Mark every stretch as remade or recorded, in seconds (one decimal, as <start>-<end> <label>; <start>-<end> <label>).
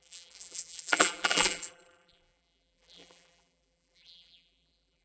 0.0-5.0 remade